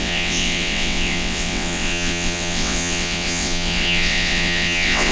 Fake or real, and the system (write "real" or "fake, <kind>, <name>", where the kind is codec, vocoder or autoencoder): fake, vocoder, WaveNeXt